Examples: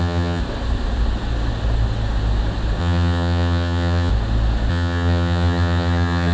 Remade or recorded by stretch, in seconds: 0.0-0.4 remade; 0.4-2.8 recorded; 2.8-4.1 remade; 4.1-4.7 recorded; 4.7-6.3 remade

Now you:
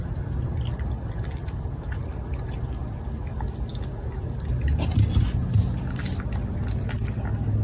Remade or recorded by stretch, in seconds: 0.0-7.6 recorded

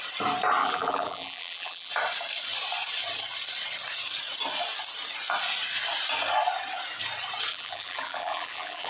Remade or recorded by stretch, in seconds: 0.0-0.6 recorded; 0.6-1.9 remade; 1.9-7.5 recorded; 7.5-8.9 remade

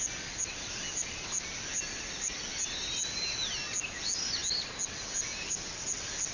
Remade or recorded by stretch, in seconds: 0.0-6.3 recorded